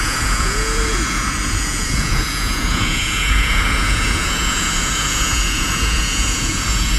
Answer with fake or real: fake